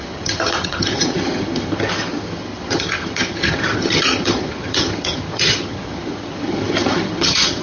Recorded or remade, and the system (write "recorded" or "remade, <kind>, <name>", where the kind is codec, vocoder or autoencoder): remade, vocoder, HiFi-GAN